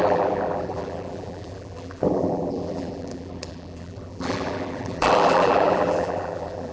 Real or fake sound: fake